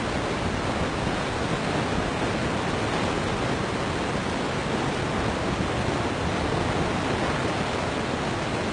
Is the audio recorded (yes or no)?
yes